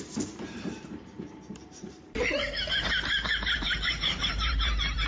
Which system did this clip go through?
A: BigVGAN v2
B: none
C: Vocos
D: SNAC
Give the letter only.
A